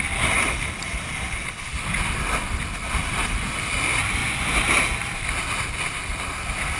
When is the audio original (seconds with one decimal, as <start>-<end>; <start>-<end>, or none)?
0.0-4.2; 4.7-6.8